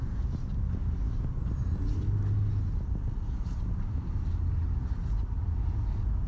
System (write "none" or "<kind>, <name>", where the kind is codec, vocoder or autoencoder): none